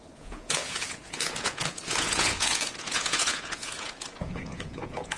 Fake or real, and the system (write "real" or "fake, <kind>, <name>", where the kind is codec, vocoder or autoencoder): fake, vocoder, Vocos